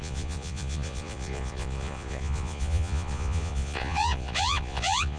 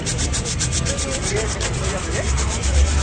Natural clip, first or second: second